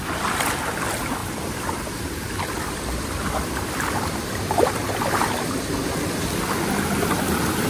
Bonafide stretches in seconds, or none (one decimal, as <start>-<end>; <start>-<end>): 0.0-1.2; 5.1-7.7